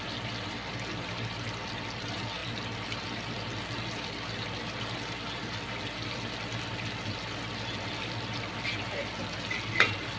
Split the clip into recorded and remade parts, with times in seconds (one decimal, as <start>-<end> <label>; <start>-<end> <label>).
0.0-10.2 recorded